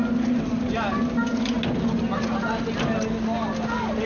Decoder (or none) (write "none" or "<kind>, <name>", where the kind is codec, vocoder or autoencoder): none